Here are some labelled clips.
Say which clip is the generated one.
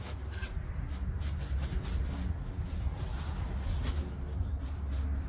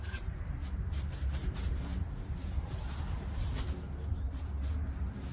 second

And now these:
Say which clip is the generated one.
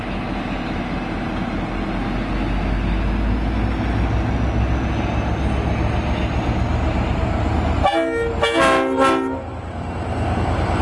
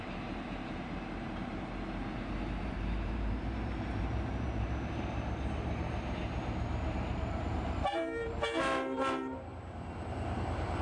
second